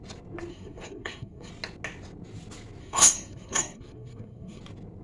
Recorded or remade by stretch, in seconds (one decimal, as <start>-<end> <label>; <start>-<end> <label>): 0.0-0.5 recorded; 0.5-1.5 remade; 1.5-2.8 recorded; 2.8-4.6 remade; 4.6-5.0 recorded